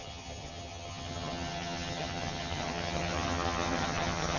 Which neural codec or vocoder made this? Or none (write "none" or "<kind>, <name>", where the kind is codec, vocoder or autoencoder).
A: vocoder, HiFi-GAN